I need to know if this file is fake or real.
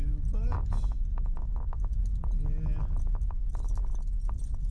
real